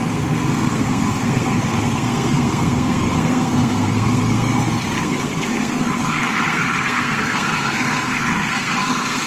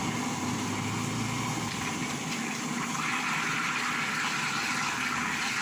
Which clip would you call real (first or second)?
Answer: second